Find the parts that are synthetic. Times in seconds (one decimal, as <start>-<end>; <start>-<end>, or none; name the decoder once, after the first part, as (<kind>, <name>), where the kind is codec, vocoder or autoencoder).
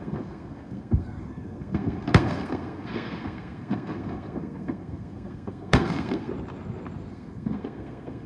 0.0-6.3 (codec, SNAC); 7.1-8.3